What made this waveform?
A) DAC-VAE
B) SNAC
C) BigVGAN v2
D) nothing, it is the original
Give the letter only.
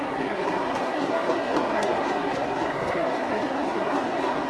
B